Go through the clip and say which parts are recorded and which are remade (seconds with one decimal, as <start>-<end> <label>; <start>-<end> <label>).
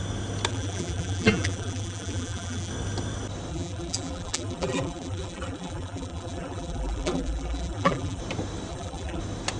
0.0-0.5 recorded; 0.5-2.7 remade; 2.7-3.5 recorded; 3.5-8.2 remade; 8.2-8.7 recorded; 8.7-9.2 remade; 9.2-9.6 recorded